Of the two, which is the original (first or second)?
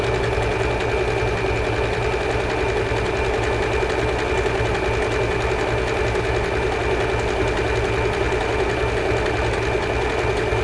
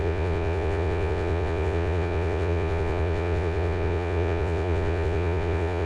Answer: first